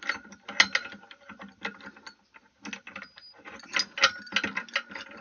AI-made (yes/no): no